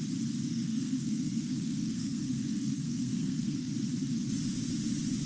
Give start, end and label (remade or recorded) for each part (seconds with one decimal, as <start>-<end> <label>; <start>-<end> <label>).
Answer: 0.0-0.5 recorded; 0.5-3.7 remade; 3.7-5.3 recorded